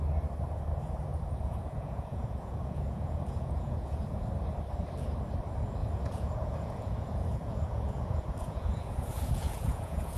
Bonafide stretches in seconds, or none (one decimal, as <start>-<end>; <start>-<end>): 0.0-1.1; 4.3-5.8